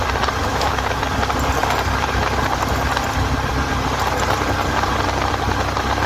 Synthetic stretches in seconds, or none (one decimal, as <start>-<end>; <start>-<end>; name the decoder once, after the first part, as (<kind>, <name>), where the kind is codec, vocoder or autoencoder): 0.5-1.0 (autoencoder, DAC-VAE)